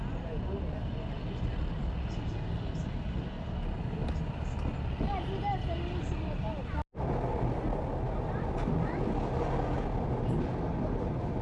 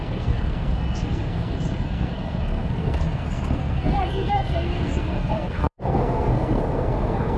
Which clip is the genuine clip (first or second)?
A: first